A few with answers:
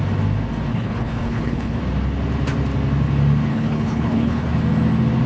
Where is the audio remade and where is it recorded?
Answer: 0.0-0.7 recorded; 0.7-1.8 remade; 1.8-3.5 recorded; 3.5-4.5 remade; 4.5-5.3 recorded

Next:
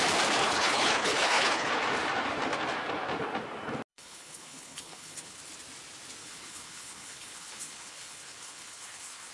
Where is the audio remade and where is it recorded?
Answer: 0.0-0.4 recorded; 0.4-1.7 remade; 1.7-3.9 recorded; 3.9-5.4 remade; 5.4-6.2 recorded; 6.2-9.3 remade

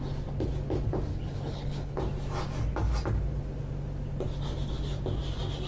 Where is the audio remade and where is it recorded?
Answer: 0.0-1.1 recorded; 1.1-2.0 remade; 2.0-5.7 recorded

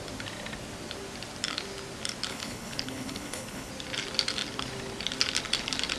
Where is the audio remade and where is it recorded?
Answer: 0.0-2.3 recorded; 2.3-3.7 remade; 3.7-6.0 recorded

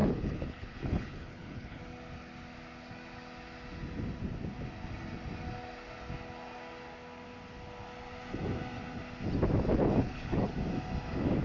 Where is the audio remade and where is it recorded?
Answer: 0.0-1.8 remade; 1.8-9.7 recorded; 9.7-10.5 remade; 10.5-11.4 recorded

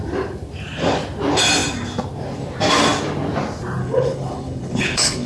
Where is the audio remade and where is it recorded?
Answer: 0.0-3.8 recorded; 3.8-5.3 remade

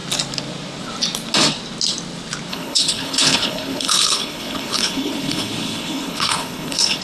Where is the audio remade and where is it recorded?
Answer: 0.0-2.5 recorded; 2.5-7.0 remade